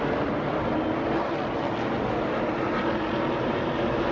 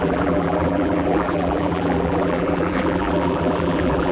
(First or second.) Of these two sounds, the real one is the first